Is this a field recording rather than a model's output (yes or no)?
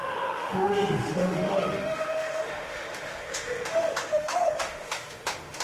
no